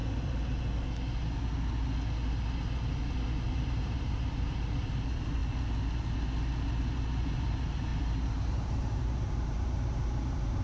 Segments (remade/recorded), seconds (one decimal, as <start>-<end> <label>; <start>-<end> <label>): 0.0-3.5 recorded; 3.5-5.4 remade; 5.4-6.8 recorded; 6.8-10.6 remade